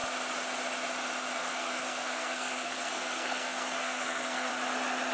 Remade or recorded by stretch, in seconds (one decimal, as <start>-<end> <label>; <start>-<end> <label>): 0.0-1.4 recorded; 1.4-4.5 remade; 4.5-5.1 recorded